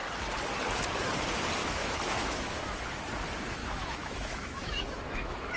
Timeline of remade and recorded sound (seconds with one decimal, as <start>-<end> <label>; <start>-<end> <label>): 0.0-1.6 recorded; 1.6-2.7 remade; 2.7-3.6 recorded; 3.6-5.6 remade